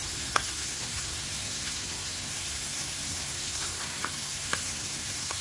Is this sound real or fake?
fake